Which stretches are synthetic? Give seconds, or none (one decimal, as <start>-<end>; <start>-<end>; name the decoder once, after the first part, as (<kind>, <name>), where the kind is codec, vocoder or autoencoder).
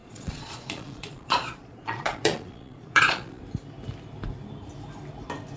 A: 0.0-3.4 (vocoder, Vocos)